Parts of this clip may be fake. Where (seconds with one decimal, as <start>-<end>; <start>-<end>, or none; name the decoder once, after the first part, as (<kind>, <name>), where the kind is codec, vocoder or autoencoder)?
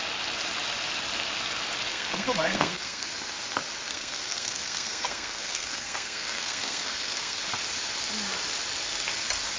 1.9-3.1 (codec, SNAC); 3.9-7.4